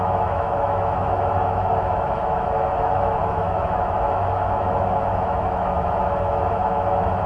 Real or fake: fake